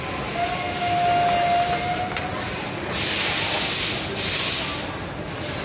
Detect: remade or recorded recorded